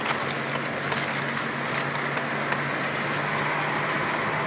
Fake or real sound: real